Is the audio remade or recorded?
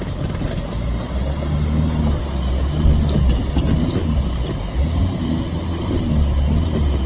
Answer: recorded